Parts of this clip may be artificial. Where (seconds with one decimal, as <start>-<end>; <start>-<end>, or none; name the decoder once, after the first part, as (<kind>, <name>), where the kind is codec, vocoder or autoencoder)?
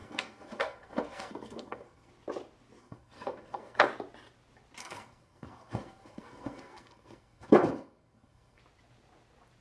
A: 0.0-2.1 (codec, SNAC); 2.8-3.9; 4.8-8.6